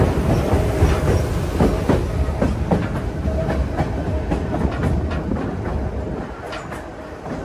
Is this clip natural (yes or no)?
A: yes